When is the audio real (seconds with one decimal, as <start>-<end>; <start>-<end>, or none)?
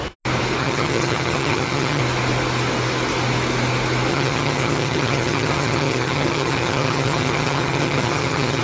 0.0-0.6; 2.0-4.1